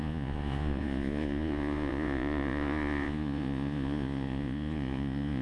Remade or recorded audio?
remade